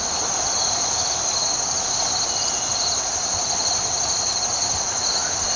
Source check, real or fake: real